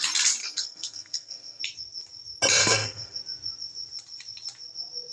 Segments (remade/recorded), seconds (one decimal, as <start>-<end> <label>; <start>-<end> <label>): 0.0-0.4 recorded; 0.4-1.6 remade; 1.6-2.6 recorded; 2.6-3.2 remade; 3.2-5.1 recorded